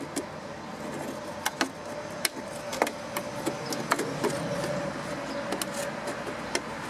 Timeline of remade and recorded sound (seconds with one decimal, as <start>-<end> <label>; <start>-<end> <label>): 0.0-6.9 recorded